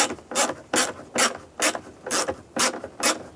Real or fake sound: real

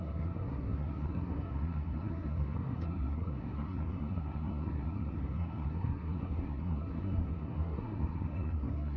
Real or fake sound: fake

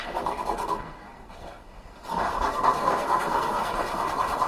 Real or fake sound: fake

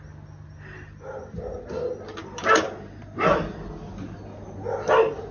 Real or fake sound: real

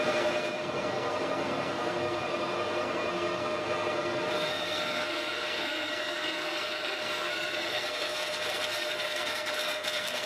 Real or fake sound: fake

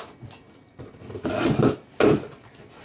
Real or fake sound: real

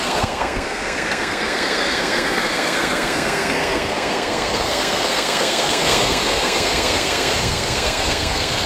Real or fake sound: fake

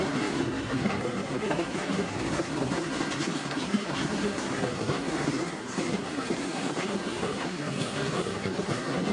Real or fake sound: fake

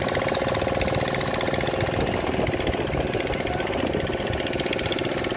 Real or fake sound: real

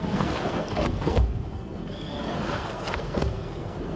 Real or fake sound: fake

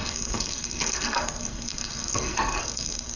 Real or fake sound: fake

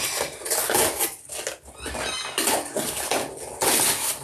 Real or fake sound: real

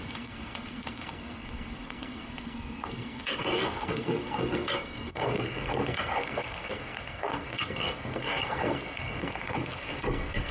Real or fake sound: fake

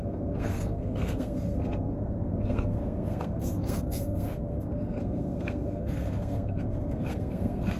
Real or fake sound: fake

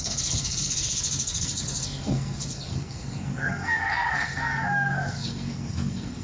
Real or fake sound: fake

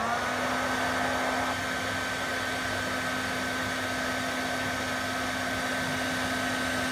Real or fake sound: real